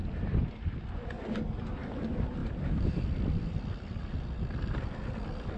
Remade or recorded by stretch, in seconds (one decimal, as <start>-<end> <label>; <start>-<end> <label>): 0.0-0.9 remade; 0.9-2.4 recorded; 2.4-3.6 remade; 3.6-5.6 recorded